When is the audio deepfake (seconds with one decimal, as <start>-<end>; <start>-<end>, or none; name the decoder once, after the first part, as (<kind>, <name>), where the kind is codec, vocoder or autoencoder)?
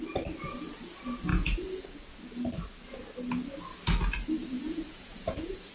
1.3-2.2 (vocoder, Vocos); 4.4-5.7